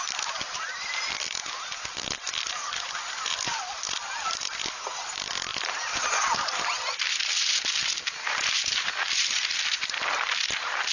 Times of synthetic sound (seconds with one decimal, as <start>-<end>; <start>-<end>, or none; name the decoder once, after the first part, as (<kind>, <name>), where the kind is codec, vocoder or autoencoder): 5.5-9.9 (vocoder, BigVGAN v2)